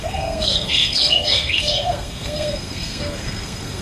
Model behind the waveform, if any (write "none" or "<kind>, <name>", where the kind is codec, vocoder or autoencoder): codec, SNAC